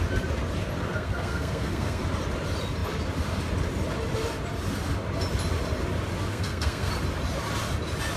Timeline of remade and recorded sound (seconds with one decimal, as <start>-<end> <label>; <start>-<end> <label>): 0.0-0.8 recorded; 0.8-2.0 remade; 2.0-6.3 recorded; 6.3-6.9 remade; 6.9-8.2 recorded